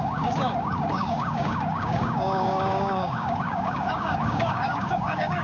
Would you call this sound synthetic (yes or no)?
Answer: yes